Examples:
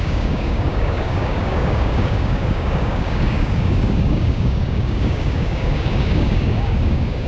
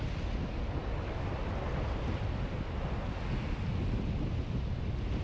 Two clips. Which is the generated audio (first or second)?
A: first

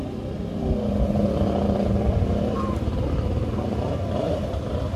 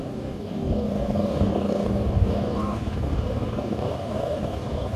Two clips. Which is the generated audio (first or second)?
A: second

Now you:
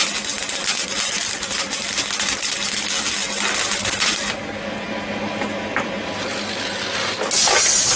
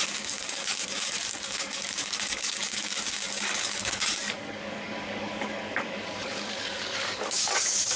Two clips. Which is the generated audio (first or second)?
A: second